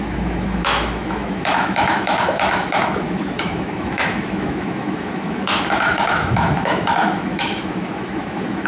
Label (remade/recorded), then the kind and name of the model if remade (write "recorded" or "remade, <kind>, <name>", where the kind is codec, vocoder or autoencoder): remade, autoencoder, DAC-VAE